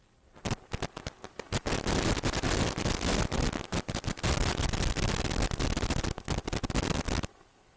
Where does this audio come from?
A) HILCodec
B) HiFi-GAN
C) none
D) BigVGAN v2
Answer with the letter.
C